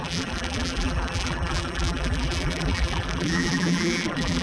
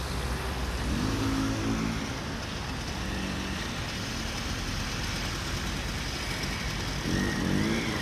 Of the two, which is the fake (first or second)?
first